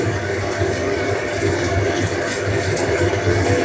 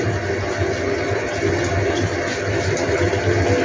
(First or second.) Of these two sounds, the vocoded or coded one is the first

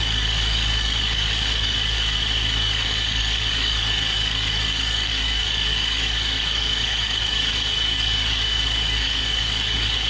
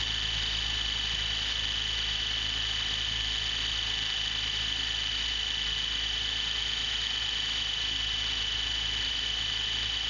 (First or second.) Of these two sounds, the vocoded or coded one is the first